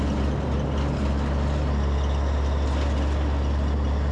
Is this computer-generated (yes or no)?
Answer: no